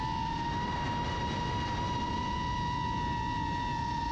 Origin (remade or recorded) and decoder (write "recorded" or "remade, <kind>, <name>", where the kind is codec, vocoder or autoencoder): recorded